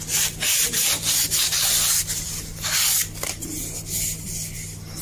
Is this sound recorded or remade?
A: remade